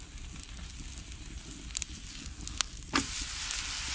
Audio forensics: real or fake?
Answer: real